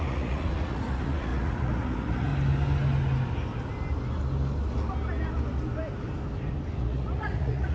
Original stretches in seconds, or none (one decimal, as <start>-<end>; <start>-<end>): 2.3-6.8